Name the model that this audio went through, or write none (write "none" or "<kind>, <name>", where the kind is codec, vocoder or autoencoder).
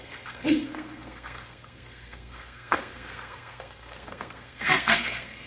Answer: codec, SNAC